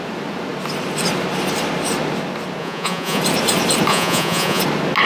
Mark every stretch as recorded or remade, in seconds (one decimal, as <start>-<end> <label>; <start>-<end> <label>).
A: 0.0-2.6 recorded; 2.6-3.2 remade; 3.2-3.9 recorded; 3.9-4.6 remade; 4.6-5.1 recorded